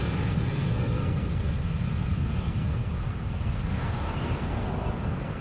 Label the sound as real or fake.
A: fake